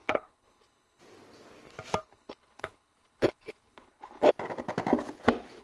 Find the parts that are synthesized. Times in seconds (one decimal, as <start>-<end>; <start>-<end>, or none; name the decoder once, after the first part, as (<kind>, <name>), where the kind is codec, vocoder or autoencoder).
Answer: 0.0-1.0 (codec, HILCodec); 2.0-4.3